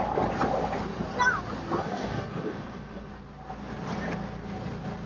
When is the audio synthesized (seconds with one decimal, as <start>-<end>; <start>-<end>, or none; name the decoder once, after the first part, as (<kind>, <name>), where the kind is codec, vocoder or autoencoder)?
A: 1.8-3.1 (codec, DAC)